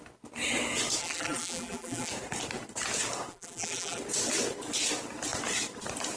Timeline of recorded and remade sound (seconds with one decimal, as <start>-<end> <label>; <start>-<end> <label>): 0.0-1.0 recorded; 1.0-2.1 remade; 2.1-3.3 recorded; 3.3-4.0 remade; 4.0-6.2 recorded